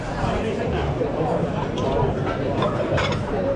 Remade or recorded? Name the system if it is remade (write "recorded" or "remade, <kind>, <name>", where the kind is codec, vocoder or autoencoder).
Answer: recorded